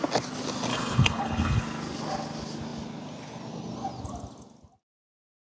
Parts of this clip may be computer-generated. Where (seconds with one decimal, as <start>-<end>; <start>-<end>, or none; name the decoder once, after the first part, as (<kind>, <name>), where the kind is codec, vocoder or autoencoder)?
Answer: 0.7-1.6 (codec, HILCodec)